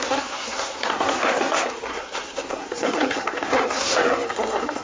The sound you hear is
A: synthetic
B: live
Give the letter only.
A